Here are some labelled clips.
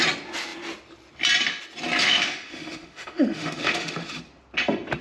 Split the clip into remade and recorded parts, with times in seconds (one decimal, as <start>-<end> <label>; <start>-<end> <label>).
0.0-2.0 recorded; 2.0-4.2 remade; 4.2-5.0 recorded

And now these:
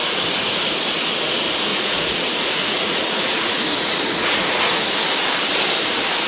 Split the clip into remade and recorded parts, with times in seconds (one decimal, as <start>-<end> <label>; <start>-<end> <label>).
0.0-1.7 recorded; 1.7-4.8 remade; 4.8-6.3 recorded

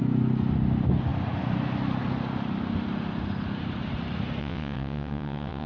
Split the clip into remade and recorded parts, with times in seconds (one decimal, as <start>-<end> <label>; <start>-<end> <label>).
0.0-4.4 recorded; 4.4-5.7 remade